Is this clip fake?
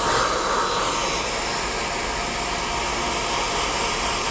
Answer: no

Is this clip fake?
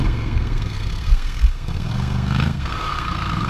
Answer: yes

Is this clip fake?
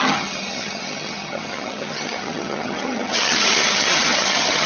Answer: yes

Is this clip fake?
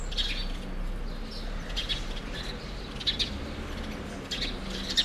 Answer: no